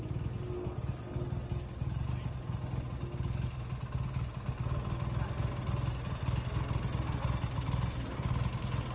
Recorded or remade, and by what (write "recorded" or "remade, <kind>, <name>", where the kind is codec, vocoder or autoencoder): recorded